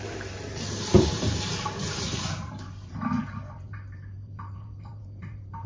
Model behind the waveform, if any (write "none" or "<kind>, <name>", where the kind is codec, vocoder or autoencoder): vocoder, BigVGAN v2